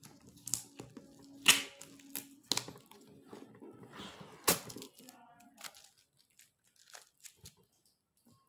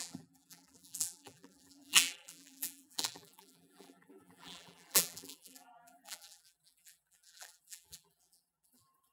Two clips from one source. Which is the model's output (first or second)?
second